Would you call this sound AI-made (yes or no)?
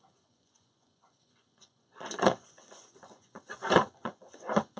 yes